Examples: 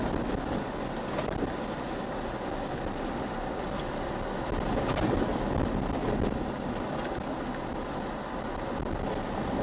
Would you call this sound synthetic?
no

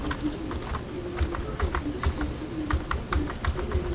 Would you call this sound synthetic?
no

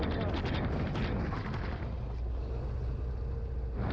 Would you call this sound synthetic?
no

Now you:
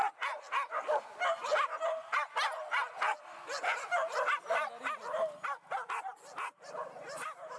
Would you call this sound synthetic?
no